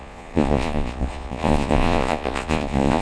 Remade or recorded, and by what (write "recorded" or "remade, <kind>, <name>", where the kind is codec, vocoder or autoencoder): remade, vocoder, Vocos